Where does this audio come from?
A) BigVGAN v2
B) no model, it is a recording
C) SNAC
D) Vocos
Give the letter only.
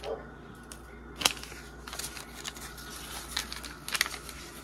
B